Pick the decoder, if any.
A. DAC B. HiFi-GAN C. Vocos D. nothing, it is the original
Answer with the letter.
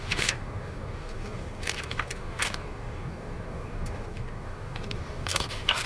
A